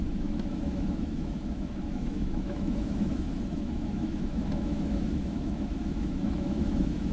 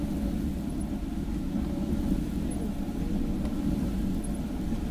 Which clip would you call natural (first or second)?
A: second